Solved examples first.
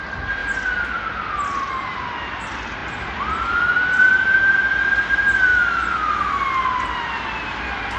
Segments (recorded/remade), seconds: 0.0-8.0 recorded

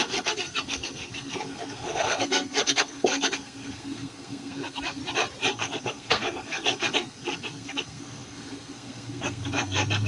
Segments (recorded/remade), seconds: 0.0-5.0 remade; 5.0-5.5 recorded; 5.5-10.1 remade